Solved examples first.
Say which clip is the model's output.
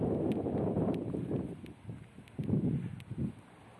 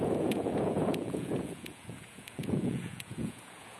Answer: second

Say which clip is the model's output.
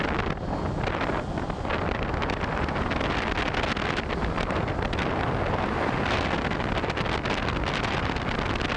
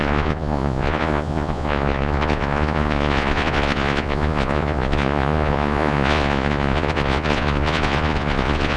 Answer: second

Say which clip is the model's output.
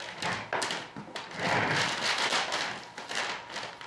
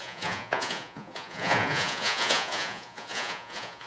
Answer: second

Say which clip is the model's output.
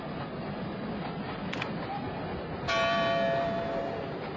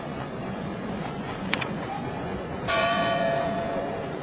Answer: second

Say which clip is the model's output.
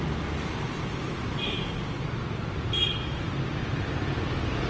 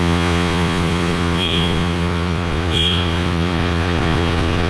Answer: second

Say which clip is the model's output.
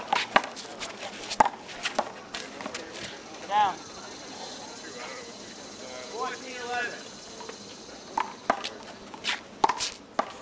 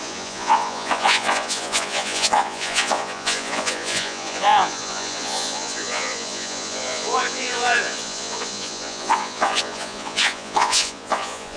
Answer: second